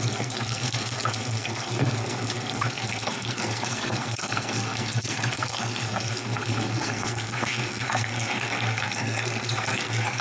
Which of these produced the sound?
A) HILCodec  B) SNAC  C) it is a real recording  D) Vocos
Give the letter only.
B